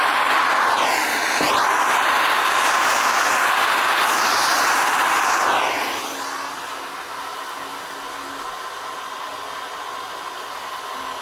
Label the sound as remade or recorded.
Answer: recorded